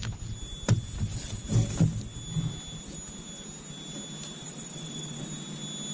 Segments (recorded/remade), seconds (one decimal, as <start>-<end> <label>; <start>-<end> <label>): 0.0-4.4 recorded; 4.4-5.2 remade; 5.2-5.9 recorded